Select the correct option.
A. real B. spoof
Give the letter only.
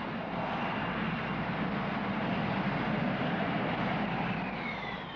A